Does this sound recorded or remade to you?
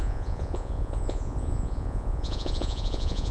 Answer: remade